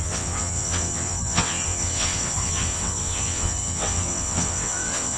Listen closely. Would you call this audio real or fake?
fake